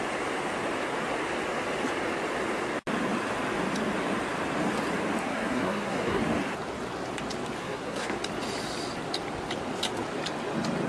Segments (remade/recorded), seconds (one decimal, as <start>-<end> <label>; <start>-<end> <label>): 0.0-5.2 recorded; 5.2-6.2 remade; 6.2-7.6 recorded; 7.6-8.2 remade; 8.2-10.9 recorded